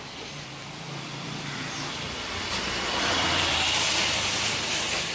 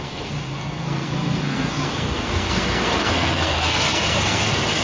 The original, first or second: first